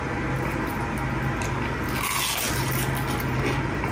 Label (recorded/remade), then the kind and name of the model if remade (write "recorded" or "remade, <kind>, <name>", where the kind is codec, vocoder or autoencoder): recorded